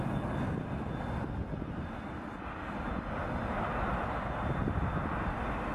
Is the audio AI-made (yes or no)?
no